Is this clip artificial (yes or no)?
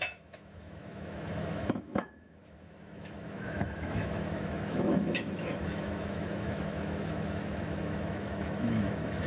yes